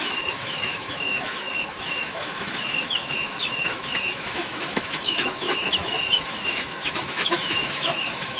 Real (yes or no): no